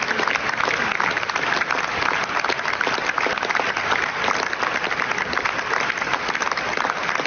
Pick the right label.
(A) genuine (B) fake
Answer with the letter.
A